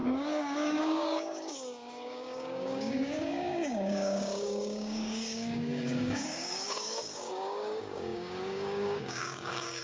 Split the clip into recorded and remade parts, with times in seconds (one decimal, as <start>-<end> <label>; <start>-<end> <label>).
0.0-9.8 remade